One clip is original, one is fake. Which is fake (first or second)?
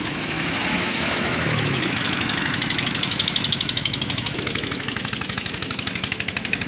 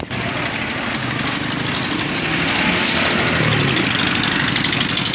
first